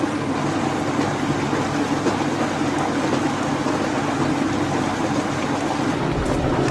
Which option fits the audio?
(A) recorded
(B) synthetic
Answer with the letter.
A